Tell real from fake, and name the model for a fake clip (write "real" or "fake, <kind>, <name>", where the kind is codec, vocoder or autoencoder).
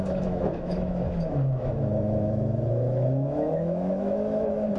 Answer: fake, autoencoder, DAC-VAE